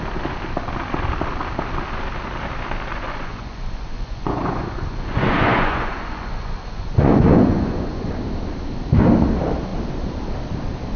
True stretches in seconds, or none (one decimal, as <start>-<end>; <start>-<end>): 0.0-2.9; 8.1-11.0